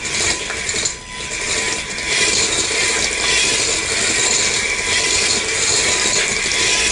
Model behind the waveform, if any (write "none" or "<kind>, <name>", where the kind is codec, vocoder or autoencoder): none